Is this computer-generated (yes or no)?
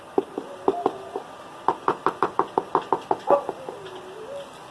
no